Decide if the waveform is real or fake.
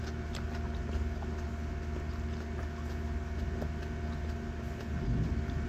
real